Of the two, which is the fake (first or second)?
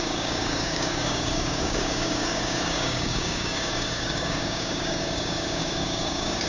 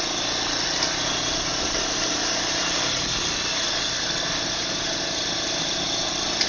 first